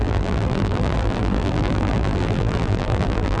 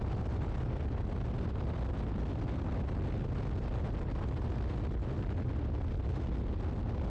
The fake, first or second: first